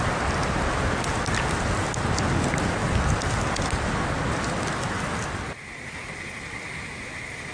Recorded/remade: recorded